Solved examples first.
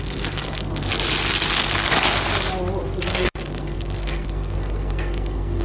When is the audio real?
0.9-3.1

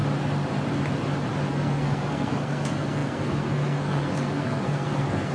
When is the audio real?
0.0-1.5

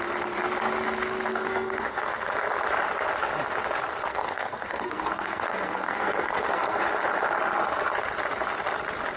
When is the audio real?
0.0-1.3; 2.3-4.1; 6.8-9.2

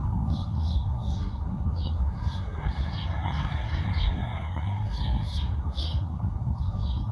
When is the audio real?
none

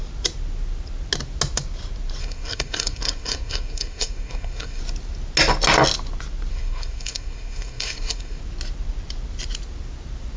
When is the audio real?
0.0-2.2; 4.8-6.5; 8.4-10.4